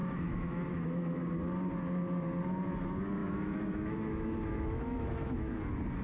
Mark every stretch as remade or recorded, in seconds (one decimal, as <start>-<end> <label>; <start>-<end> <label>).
0.0-1.2 remade; 1.2-3.2 recorded; 3.2-5.6 remade; 5.6-6.0 recorded